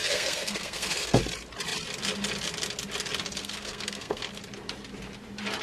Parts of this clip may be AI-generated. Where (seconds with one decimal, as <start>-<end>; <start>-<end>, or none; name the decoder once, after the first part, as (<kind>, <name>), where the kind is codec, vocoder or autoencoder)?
0.0-1.2 (codec, SNAC); 3.4-4.2